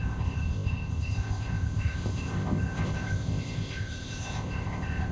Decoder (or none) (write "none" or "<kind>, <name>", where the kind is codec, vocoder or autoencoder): codec, ZipCodec